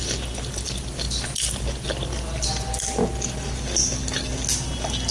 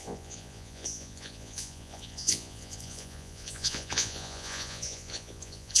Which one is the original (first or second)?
first